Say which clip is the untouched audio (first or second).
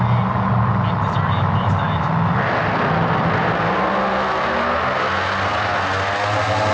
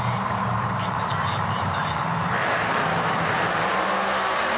first